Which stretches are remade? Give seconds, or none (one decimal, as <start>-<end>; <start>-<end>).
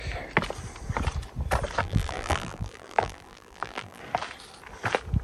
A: 1.8-4.0